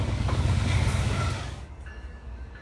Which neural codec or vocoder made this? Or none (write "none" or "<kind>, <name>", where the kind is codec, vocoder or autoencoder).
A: codec, DAC